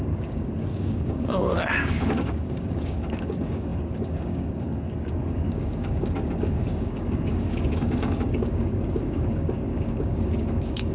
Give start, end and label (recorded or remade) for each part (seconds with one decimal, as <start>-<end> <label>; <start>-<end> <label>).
0.0-10.9 remade